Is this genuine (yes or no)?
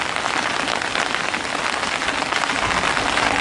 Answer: yes